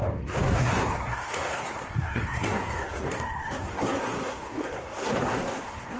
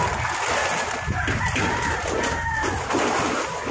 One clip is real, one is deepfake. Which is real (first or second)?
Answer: second